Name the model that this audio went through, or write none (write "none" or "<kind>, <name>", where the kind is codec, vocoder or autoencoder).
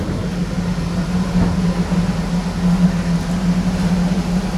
none